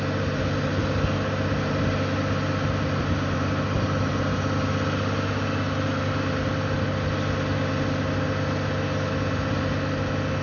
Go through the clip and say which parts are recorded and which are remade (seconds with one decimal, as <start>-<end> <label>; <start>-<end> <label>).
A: 0.0-10.4 recorded